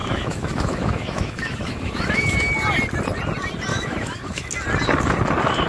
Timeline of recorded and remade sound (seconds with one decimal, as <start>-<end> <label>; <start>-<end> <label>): 0.0-2.5 remade; 2.5-3.7 recorded; 3.7-4.5 remade; 4.5-5.7 recorded